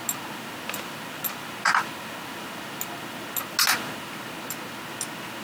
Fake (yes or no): no